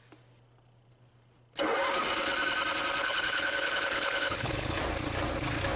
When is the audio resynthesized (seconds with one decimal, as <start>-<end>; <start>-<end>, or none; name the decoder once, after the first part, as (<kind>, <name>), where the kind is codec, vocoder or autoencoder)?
3.0-4.8 (codec, HILCodec)